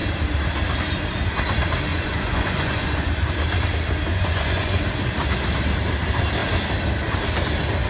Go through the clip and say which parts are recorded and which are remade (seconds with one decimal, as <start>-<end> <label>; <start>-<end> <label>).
0.0-1.9 recorded; 1.9-3.1 remade; 3.1-4.1 recorded; 4.1-4.9 remade; 4.9-7.9 recorded